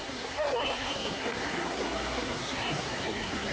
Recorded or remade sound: remade